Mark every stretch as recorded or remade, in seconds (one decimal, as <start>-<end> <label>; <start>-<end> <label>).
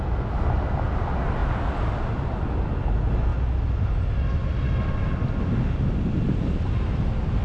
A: 0.0-7.4 recorded